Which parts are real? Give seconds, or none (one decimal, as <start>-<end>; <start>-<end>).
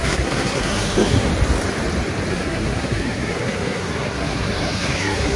1.3-2.3